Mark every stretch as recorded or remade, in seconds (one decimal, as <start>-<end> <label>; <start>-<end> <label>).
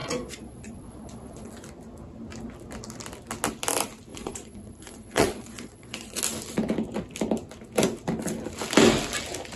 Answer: 0.0-1.5 remade; 1.5-4.1 recorded; 4.1-6.2 remade; 6.2-9.6 recorded